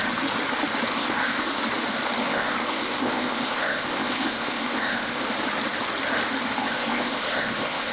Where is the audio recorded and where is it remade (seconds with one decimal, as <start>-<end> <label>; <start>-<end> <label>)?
0.0-0.9 recorded; 0.9-1.6 remade; 1.6-2.2 recorded; 2.2-5.2 remade; 5.2-6.6 recorded; 6.6-7.9 remade